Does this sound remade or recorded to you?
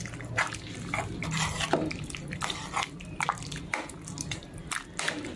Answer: recorded